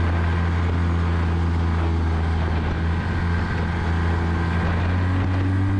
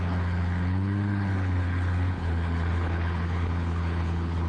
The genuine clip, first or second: first